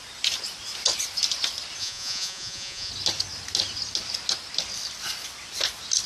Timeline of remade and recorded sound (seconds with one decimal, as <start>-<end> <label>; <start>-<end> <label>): 0.0-1.8 recorded; 1.8-2.9 remade; 2.9-6.1 recorded